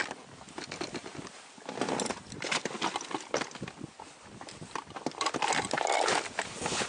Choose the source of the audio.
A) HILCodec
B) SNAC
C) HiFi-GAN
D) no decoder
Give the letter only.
D